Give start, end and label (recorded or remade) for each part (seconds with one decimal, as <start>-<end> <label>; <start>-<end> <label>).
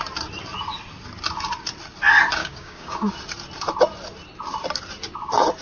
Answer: 0.0-2.4 recorded; 2.4-3.1 remade; 3.1-5.6 recorded